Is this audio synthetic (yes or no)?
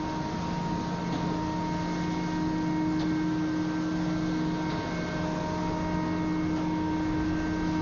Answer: no